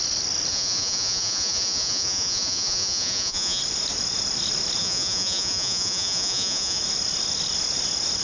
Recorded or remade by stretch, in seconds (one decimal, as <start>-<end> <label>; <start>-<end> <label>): 0.0-0.5 recorded; 0.5-3.6 remade; 3.6-4.8 recorded; 4.8-6.8 remade; 6.8-8.2 recorded